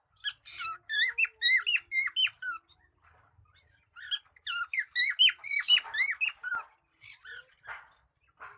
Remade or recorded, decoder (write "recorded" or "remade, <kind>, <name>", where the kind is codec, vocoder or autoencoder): recorded